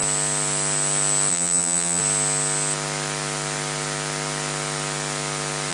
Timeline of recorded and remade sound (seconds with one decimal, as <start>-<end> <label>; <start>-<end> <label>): 0.0-1.3 recorded; 1.3-2.0 remade; 2.0-5.7 recorded